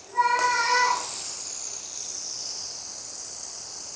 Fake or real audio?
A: real